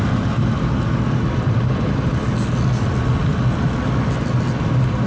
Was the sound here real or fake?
real